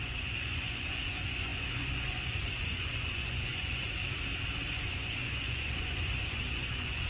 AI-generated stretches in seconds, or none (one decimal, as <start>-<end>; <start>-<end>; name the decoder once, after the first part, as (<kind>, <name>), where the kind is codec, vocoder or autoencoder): 0.0-4.0 (vocoder, Vocos); 4.7-7.1